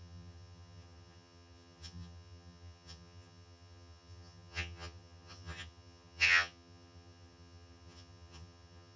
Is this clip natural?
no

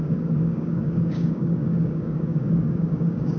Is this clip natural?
no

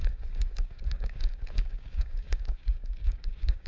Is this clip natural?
no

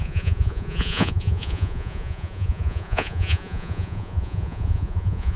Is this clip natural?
no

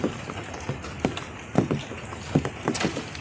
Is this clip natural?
yes